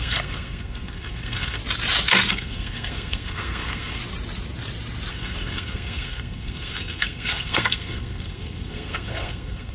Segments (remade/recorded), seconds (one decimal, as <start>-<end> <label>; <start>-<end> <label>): 0.0-1.6 remade; 1.6-2.3 recorded; 2.3-4.0 remade; 4.0-5.1 recorded; 5.1-9.7 remade